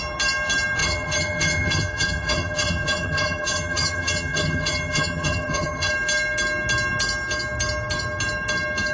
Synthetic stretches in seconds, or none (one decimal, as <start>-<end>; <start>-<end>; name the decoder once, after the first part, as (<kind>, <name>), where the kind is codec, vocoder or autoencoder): 0.8-5.9 (vocoder, HiFi-GAN)